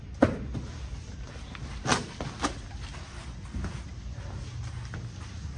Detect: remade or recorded recorded